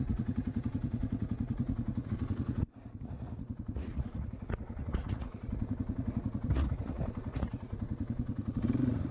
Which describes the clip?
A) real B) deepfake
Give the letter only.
B